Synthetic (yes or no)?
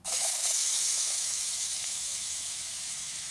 yes